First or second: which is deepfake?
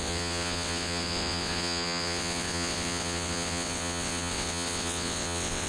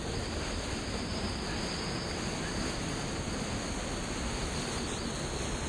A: first